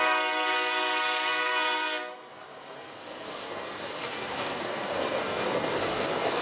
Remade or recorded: remade